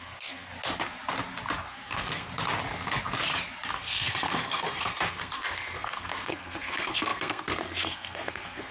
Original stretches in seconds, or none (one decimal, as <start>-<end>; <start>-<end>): 0.5-1.6; 2.3-3.7